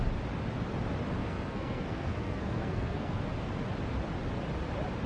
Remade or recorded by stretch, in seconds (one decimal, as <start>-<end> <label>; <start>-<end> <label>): 0.0-1.2 recorded; 1.2-3.2 remade; 3.2-5.1 recorded